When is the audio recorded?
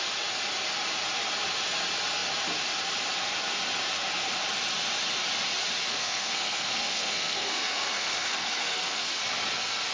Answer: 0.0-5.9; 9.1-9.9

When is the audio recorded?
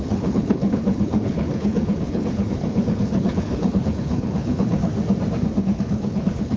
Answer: 4.9-5.6